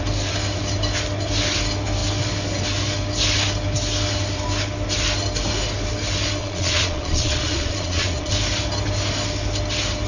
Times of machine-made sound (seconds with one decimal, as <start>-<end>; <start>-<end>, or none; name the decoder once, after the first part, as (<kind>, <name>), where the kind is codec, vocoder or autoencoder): 6.4-8.3 (vocoder, Vocos)